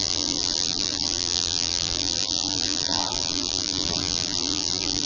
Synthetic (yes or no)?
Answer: yes